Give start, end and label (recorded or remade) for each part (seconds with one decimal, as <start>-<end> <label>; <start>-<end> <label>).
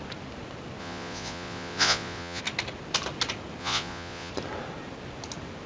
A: 0.0-0.8 recorded; 0.8-2.4 remade; 2.4-3.6 recorded; 3.6-4.3 remade; 4.3-5.7 recorded